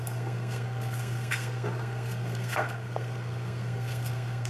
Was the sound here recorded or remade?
remade